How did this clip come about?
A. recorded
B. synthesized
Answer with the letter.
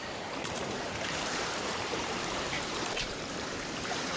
B